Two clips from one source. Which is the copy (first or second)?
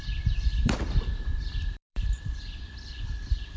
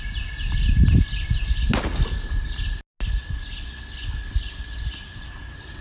first